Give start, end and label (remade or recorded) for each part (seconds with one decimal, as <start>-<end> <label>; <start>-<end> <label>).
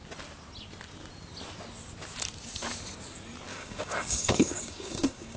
0.0-3.5 recorded; 3.5-5.4 remade